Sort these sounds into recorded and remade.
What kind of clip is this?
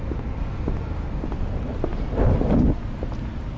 recorded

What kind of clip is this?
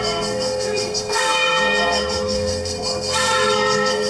remade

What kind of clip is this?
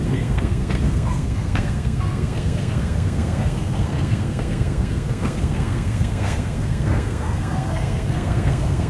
remade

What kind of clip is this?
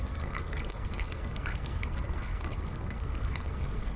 remade